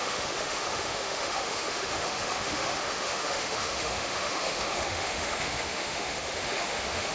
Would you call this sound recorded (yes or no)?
no